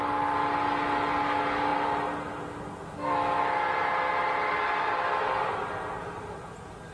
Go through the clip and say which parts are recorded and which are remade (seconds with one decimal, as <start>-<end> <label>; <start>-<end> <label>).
0.0-6.9 recorded